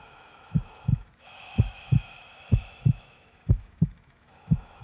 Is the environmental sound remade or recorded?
remade